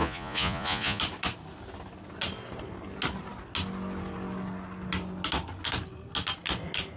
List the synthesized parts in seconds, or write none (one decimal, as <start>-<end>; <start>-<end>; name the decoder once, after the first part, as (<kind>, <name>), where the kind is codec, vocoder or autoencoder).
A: 0.0-1.0 (vocoder, Vocos)